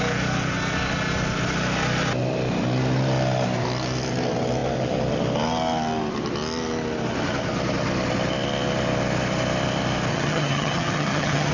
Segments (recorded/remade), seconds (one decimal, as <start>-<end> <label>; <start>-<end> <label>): 0.0-10.1 recorded; 10.1-11.5 remade